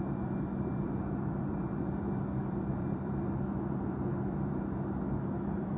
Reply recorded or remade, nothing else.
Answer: remade